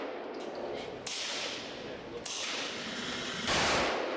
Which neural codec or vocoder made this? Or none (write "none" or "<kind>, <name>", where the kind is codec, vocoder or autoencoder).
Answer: none